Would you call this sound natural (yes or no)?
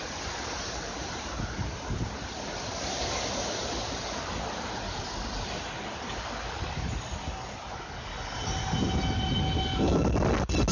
yes